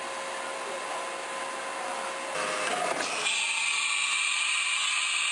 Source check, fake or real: real